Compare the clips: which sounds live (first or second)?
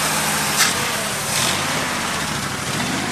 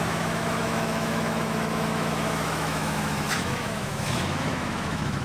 first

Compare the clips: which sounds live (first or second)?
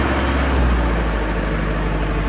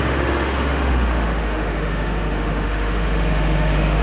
first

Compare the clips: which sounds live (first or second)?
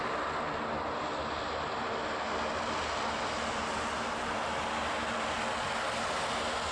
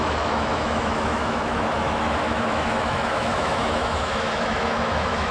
first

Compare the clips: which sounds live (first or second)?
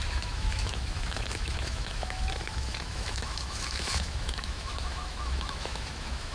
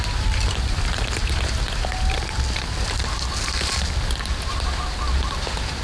second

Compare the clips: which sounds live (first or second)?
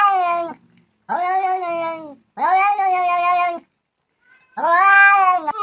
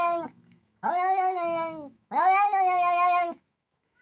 first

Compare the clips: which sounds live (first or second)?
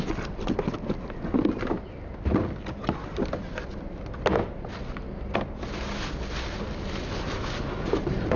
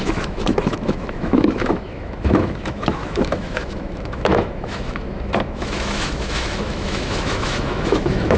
first